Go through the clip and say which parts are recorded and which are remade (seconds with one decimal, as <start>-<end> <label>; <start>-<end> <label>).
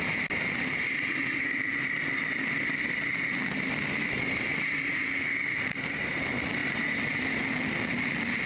0.0-8.5 recorded